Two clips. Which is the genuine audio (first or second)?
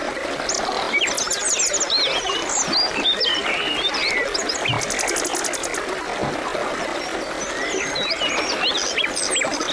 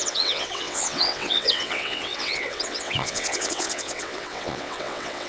first